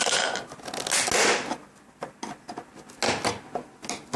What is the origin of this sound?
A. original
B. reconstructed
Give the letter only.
A